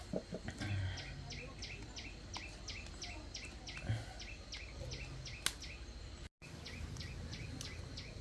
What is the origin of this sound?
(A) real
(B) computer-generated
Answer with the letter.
A